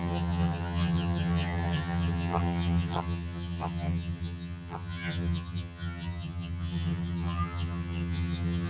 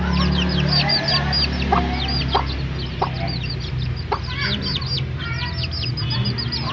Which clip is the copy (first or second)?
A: first